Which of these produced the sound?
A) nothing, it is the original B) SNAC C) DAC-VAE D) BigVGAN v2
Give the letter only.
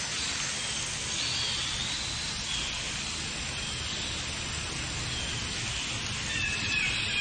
A